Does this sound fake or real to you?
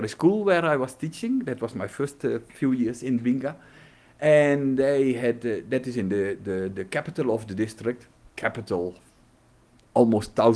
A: real